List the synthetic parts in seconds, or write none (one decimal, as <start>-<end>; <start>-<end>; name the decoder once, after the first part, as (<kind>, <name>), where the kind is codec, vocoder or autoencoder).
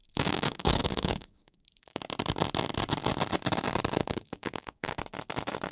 0.0-2.0 (codec, DAC); 4.0-5.0